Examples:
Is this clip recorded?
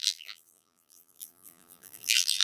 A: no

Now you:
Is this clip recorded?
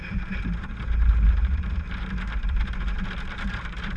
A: no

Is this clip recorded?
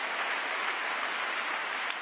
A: yes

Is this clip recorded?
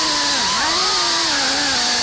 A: yes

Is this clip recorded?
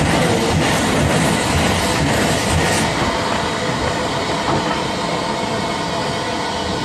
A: yes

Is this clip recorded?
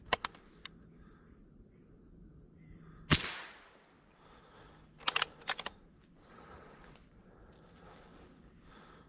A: yes